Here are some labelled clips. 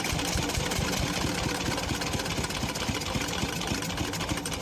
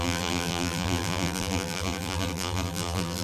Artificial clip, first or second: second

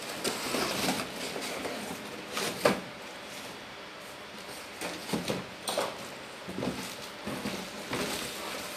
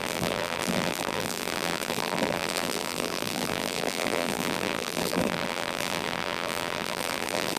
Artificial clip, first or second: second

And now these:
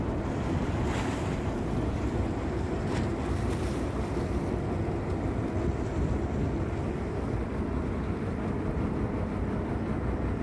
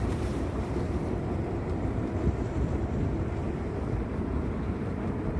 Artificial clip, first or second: second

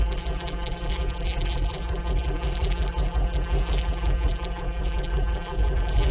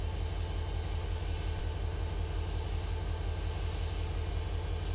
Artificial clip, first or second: first